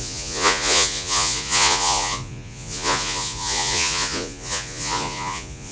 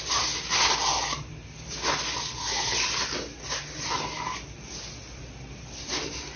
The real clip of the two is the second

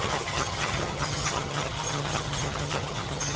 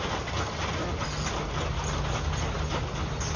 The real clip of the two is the second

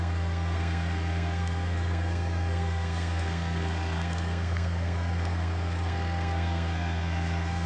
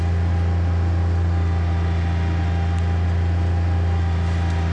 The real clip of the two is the second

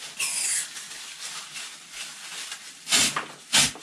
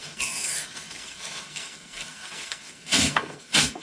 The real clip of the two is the first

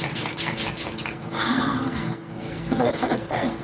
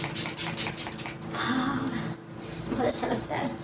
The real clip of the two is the second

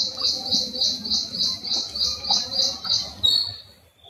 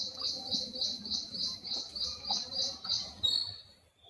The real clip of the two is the first